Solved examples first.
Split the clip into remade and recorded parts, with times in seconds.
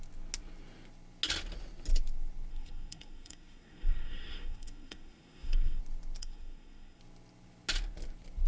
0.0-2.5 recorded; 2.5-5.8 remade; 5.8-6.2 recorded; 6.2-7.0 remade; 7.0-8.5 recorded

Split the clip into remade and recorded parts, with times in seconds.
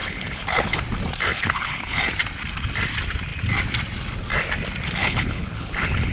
0.0-0.8 remade; 0.8-1.3 recorded; 1.3-2.0 remade; 2.0-5.0 recorded; 5.0-6.1 remade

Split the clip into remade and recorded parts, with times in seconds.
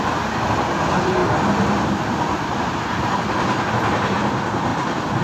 0.0-1.2 recorded; 1.2-3.7 remade; 3.7-5.2 recorded